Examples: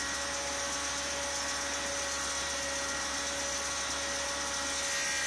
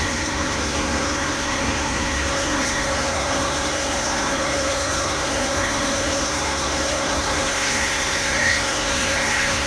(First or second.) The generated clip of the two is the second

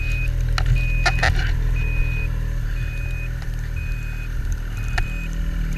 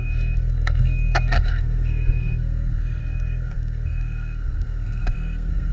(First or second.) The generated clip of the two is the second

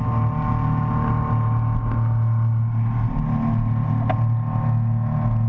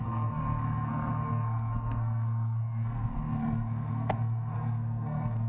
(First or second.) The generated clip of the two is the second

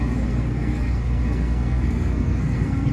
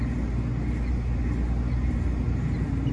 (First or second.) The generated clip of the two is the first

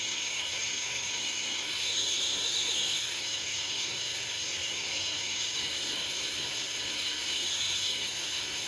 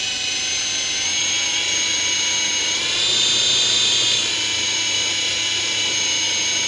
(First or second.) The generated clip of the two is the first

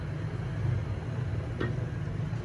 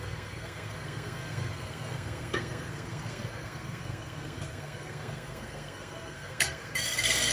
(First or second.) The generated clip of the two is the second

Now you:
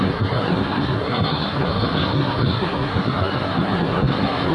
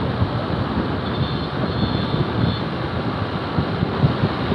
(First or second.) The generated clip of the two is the first